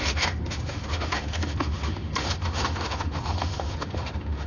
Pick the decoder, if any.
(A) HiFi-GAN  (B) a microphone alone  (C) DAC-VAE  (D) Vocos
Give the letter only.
C